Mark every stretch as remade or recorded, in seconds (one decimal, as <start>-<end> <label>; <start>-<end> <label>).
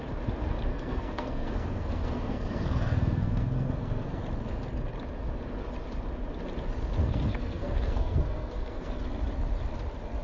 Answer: 0.0-0.7 recorded; 0.7-4.2 remade; 4.2-7.0 recorded; 7.0-9.0 remade; 9.0-10.2 recorded